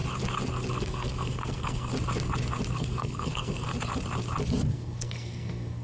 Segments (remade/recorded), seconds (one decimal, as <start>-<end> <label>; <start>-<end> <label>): 0.0-0.7 recorded; 0.7-1.9 remade; 1.9-2.7 recorded; 2.7-3.7 remade; 3.7-4.7 recorded; 4.7-5.8 remade